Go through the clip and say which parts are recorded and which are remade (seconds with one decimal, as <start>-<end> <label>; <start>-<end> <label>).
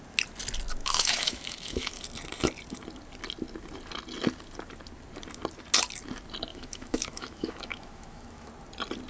0.0-0.8 recorded; 0.8-2.0 remade; 2.0-6.5 recorded; 6.5-8.5 remade; 8.5-9.1 recorded